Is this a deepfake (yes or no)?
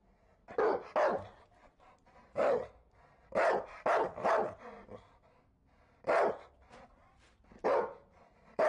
no